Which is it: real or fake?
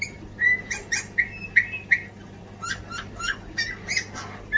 real